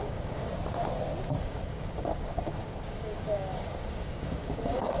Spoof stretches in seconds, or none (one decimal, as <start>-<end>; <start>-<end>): 0.0-0.5; 1.4-5.0